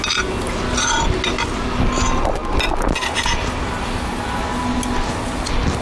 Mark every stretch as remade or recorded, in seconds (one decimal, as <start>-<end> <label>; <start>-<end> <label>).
0.0-5.8 recorded

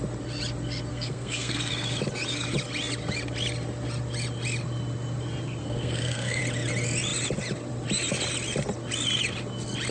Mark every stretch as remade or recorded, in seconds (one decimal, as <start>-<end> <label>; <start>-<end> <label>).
0.0-0.9 recorded; 0.9-1.7 remade; 1.7-5.6 recorded; 5.6-6.4 remade; 6.4-9.9 recorded

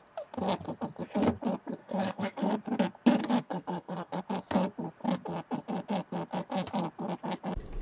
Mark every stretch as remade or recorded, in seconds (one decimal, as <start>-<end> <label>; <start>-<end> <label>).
0.0-1.8 recorded; 1.8-2.5 remade; 2.5-3.2 recorded; 3.2-4.2 remade; 4.2-7.8 recorded

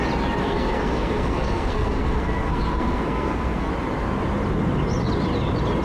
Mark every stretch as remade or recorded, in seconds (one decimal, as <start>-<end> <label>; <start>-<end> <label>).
0.0-0.4 recorded; 0.4-3.7 remade; 3.7-5.8 recorded

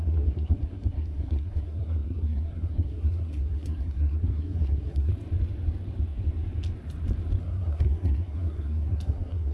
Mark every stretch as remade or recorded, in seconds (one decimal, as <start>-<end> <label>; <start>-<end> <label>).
0.0-5.1 remade; 5.1-7.4 recorded; 7.4-9.5 remade